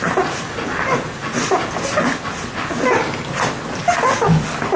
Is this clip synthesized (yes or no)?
no